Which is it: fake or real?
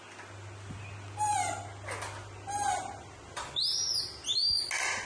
real